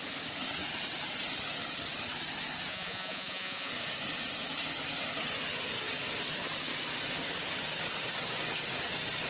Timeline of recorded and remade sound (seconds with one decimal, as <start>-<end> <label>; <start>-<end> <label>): 0.0-2.7 recorded; 2.7-3.7 remade; 3.7-9.3 recorded